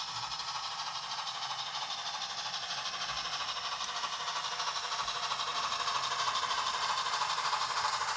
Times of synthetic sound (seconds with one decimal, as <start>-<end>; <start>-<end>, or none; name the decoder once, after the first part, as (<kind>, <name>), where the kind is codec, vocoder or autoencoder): none